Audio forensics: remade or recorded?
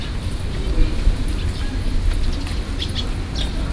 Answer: recorded